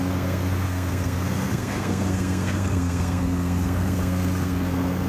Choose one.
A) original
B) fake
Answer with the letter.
B